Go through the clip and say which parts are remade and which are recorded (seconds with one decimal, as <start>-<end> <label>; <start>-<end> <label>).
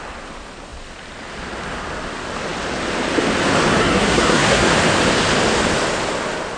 0.0-3.8 recorded; 3.8-4.7 remade; 4.7-6.6 recorded